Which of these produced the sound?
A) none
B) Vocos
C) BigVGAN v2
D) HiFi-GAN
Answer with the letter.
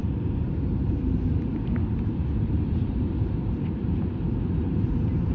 C